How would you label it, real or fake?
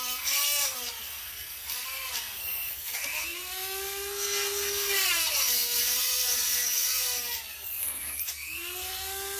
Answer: fake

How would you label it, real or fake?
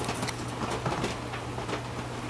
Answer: real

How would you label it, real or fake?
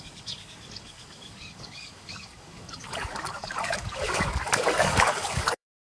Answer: fake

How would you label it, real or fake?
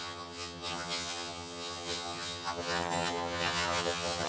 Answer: fake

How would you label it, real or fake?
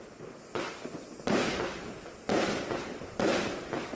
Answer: real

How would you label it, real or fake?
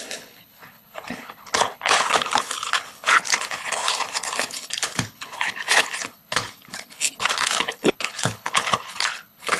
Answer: fake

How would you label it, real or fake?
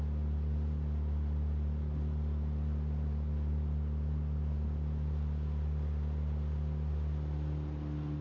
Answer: real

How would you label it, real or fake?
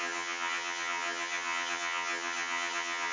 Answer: fake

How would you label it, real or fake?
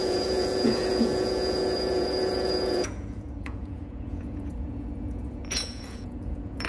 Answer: fake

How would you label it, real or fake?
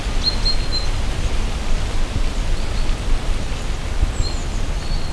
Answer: real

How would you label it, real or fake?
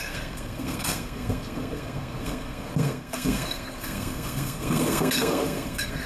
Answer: fake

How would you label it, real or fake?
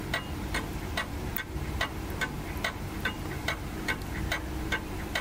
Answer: real